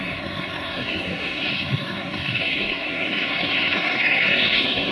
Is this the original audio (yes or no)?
no